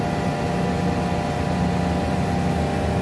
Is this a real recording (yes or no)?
yes